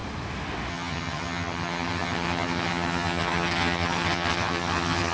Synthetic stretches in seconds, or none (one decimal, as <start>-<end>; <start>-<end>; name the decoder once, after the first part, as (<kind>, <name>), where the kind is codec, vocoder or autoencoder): 0.7-5.1 (vocoder, HiFi-GAN)